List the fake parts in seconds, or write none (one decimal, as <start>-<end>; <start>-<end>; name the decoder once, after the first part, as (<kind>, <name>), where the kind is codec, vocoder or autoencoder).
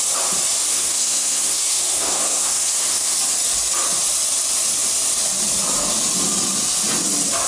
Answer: 0.7-3.2 (codec, SNAC)